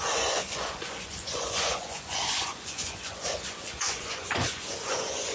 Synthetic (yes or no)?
yes